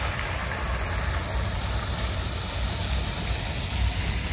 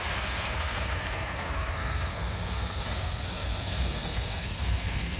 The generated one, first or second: second